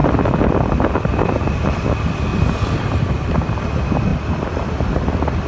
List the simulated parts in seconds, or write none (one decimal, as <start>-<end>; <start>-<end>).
0.0-1.1; 2.3-3.3